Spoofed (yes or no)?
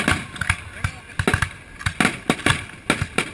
no